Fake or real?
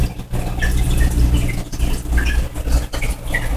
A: real